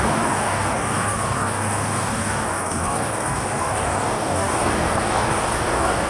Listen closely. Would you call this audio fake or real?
fake